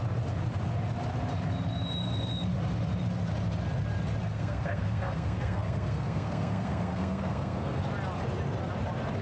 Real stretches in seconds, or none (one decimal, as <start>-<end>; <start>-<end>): 0.0-4.2; 7.8-9.2